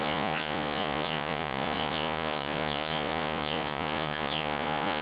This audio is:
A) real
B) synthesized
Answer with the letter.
B